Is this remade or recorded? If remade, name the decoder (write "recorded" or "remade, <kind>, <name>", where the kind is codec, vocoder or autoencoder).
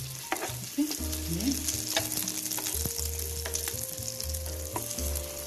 recorded